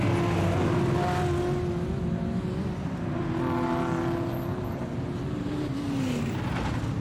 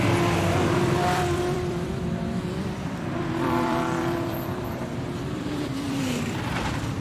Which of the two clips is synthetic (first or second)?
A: second